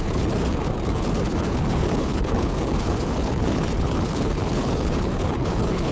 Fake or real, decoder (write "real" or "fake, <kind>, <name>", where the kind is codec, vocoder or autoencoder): fake, codec, HILCodec